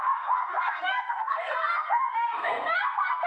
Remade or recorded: remade